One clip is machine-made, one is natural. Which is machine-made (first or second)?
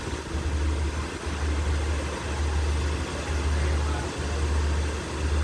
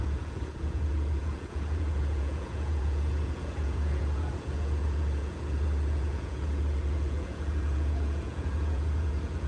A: second